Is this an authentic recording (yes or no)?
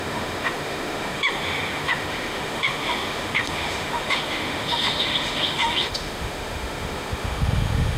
no